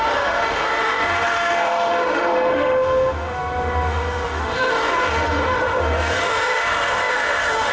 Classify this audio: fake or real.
fake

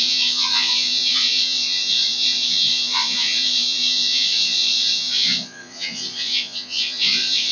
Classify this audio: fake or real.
fake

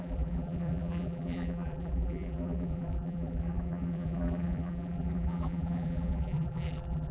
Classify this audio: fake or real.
fake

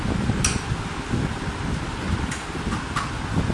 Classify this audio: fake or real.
real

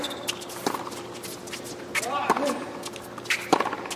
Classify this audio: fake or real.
real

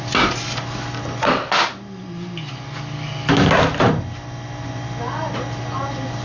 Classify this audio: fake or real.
real